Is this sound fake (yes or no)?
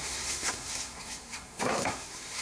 yes